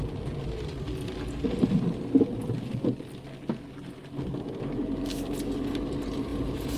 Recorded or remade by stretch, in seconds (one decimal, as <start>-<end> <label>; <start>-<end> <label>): 0.0-6.3 recorded; 6.3-6.8 remade